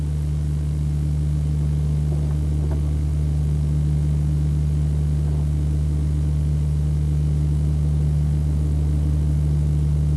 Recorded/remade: recorded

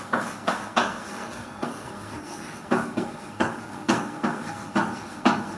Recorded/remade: remade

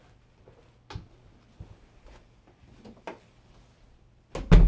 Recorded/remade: recorded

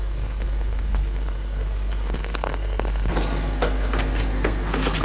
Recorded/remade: remade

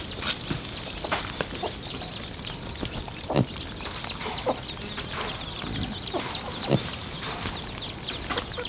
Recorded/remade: recorded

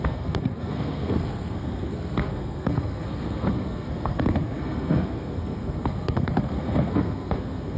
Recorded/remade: remade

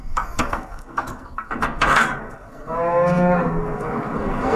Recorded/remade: remade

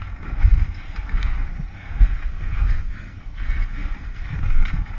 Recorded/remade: remade